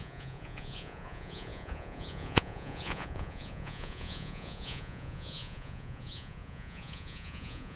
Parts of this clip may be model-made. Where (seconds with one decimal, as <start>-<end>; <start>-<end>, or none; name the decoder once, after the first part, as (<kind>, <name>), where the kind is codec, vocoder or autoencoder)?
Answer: 0.0-7.8 (vocoder, Vocos)